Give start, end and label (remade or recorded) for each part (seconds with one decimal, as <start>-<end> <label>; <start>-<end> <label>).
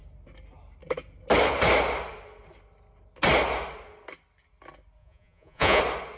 0.0-5.0 recorded; 5.0-5.8 remade; 5.8-6.2 recorded